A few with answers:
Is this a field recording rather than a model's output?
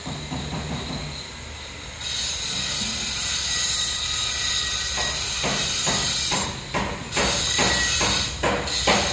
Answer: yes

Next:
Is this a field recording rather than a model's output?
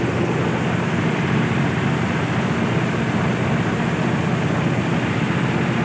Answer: yes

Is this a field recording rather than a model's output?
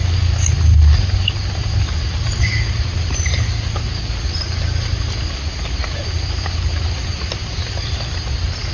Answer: yes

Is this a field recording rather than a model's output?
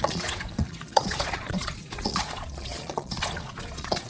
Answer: no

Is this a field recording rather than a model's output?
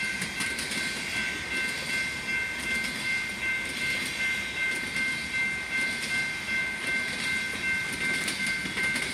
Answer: yes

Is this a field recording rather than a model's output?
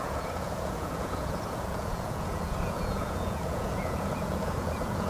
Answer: no